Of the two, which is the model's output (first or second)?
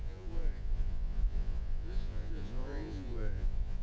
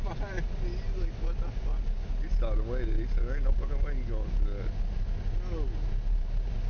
first